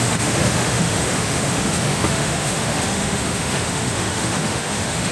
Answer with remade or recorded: remade